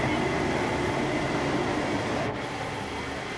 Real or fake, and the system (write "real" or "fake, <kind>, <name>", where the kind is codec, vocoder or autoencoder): real